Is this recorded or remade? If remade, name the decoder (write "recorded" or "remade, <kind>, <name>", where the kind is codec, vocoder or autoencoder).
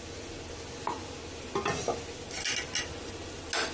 recorded